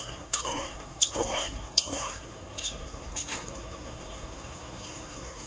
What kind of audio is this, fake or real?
fake